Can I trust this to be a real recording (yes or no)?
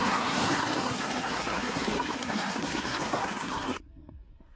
no